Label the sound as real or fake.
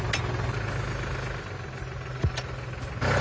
real